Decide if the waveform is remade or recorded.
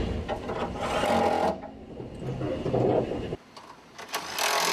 recorded